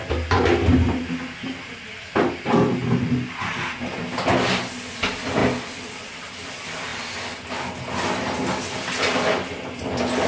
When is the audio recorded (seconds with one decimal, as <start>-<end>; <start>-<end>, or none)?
0.0-6.9; 7.5-10.3